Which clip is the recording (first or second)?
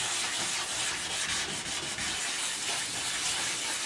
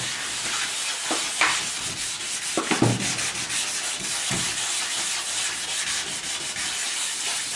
first